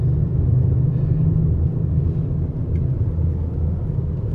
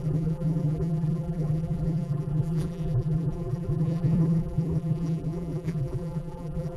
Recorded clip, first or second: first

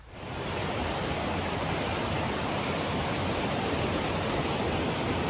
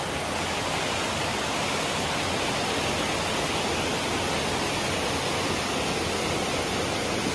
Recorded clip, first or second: second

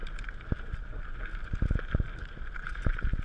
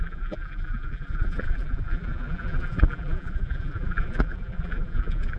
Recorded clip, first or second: first